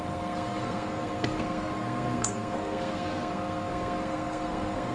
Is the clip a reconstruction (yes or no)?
yes